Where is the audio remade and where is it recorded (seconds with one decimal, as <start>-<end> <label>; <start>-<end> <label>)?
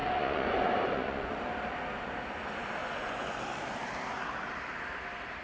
0.0-1.4 remade; 1.4-2.8 recorded; 2.8-3.4 remade; 3.4-5.4 recorded